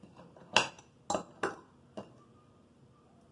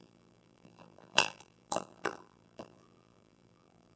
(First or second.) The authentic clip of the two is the first